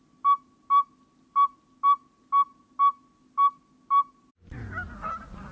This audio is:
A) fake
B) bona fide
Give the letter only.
B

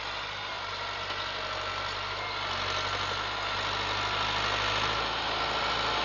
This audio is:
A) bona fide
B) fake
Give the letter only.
A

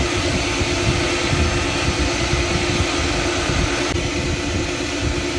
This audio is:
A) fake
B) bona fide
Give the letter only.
B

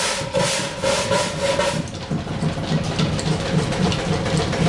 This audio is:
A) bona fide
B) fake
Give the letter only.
A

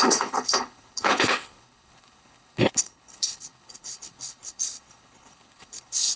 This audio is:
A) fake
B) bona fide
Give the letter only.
A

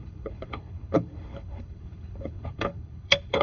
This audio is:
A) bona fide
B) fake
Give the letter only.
B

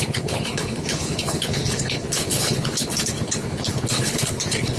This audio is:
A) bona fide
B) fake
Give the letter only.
B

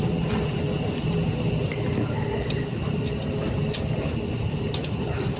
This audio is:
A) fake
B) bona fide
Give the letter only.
B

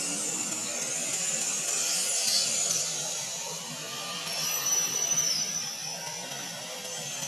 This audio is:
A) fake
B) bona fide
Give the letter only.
B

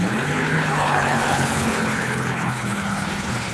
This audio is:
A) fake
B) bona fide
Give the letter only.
A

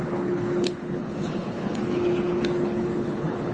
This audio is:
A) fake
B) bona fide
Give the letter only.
A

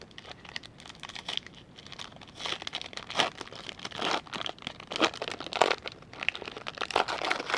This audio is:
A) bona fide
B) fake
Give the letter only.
A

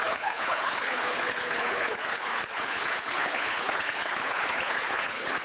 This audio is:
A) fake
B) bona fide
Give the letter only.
A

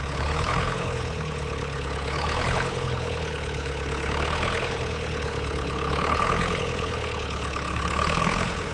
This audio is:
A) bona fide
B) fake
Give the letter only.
B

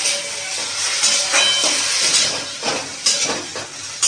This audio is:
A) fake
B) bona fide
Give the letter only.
B